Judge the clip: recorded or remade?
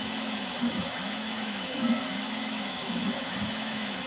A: remade